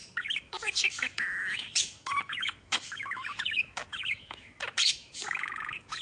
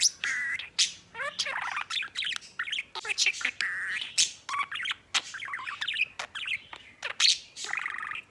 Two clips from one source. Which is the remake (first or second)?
first